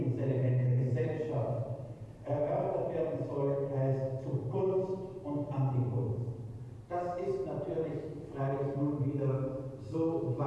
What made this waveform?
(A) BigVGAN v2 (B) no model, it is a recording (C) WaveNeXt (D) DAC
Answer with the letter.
A